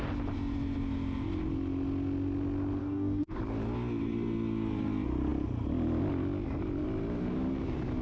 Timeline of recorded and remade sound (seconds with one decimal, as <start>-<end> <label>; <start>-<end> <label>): 0.0-2.8 recorded; 2.8-3.4 remade; 3.4-8.0 recorded